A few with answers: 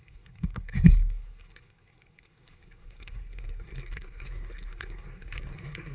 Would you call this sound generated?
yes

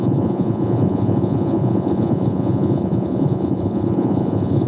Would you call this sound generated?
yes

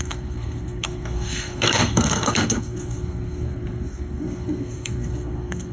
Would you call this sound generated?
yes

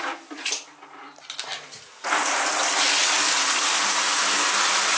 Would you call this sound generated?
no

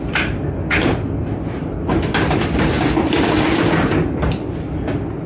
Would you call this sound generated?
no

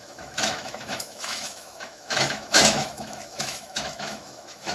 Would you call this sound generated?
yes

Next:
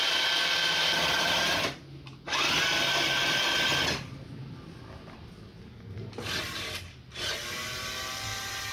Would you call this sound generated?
no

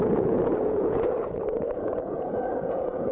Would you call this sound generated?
yes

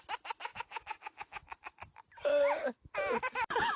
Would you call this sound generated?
no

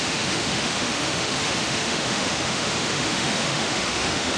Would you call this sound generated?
yes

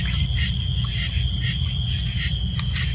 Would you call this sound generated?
no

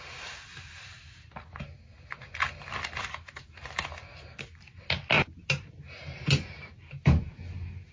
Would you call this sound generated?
no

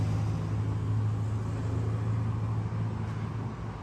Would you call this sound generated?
no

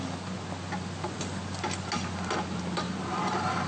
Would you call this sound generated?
no